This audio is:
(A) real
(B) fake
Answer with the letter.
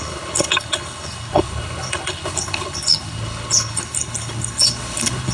B